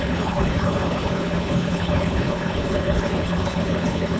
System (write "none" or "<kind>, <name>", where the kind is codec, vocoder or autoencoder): codec, HILCodec